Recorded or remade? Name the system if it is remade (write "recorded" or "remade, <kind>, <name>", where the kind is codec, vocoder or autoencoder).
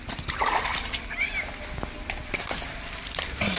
recorded